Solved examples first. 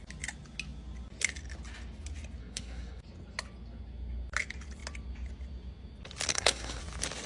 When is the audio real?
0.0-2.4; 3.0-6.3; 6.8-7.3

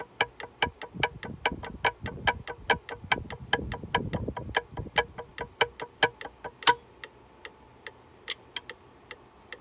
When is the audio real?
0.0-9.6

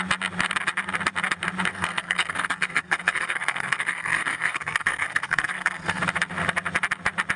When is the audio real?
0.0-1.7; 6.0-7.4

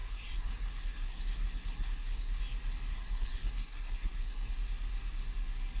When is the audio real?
2.4-2.9; 4.5-5.8

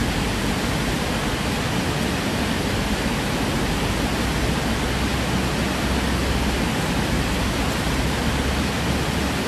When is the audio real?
0.0-9.5

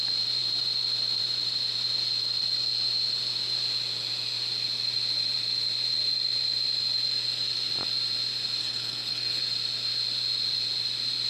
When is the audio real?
0.0-8.6; 9.4-11.3

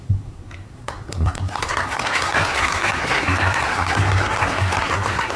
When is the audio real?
none